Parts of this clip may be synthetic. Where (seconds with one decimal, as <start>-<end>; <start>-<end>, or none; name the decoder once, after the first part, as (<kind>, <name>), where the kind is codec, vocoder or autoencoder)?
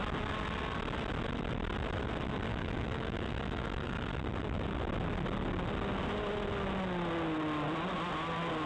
2.5-4.1 (autoencoder, DAC-VAE)